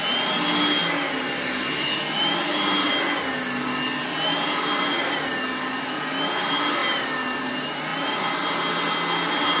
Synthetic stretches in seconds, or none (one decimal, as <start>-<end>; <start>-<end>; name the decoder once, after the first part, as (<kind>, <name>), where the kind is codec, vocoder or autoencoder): none